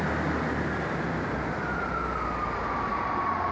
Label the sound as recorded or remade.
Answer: recorded